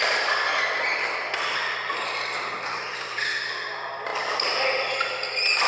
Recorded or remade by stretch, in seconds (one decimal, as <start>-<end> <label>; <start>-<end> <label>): 0.0-5.7 recorded